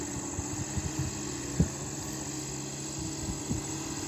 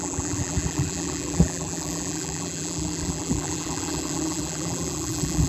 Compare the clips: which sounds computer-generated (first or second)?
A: second